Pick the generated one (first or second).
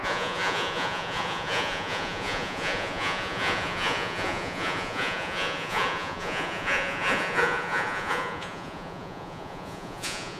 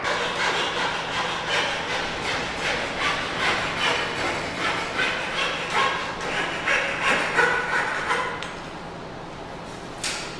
first